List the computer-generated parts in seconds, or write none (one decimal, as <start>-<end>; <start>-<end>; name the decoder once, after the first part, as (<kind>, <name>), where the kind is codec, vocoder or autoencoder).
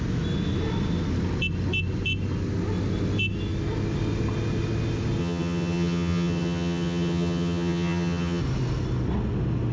5.2-8.4 (vocoder, HiFi-GAN)